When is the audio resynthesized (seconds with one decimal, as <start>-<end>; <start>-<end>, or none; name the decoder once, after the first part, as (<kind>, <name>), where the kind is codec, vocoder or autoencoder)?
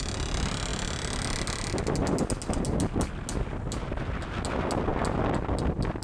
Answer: none